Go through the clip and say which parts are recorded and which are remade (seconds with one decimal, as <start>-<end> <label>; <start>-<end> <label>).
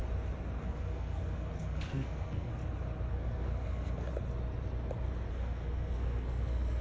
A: 0.0-0.6 recorded; 0.6-2.5 remade; 2.5-3.1 recorded; 3.1-4.1 remade; 4.1-5.3 recorded; 5.3-6.8 remade